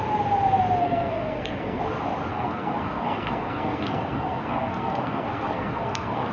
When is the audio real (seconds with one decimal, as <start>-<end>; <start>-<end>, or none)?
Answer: 0.0-0.8; 1.8-2.3